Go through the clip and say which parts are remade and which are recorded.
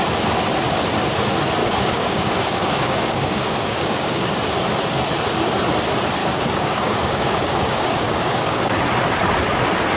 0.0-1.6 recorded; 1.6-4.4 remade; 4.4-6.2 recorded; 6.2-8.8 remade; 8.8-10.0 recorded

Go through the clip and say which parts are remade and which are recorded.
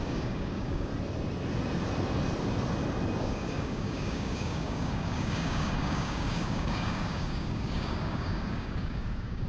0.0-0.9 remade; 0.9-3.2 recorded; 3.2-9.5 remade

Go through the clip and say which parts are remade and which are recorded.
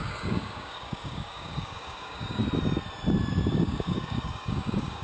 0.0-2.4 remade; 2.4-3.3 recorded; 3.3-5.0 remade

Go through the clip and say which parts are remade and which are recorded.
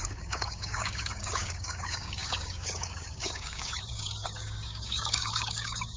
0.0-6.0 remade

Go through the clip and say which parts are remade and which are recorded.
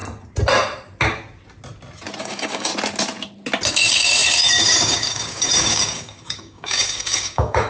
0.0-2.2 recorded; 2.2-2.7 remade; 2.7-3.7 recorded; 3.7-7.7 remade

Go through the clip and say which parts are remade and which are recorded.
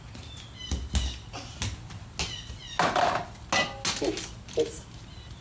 0.0-5.4 recorded